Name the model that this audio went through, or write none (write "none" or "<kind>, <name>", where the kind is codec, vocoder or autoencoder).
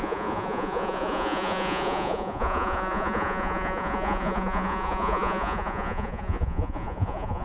vocoder, Vocos